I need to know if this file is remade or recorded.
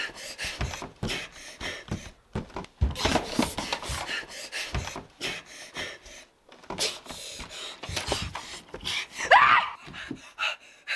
recorded